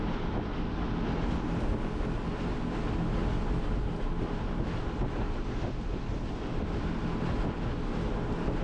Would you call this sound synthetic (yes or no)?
no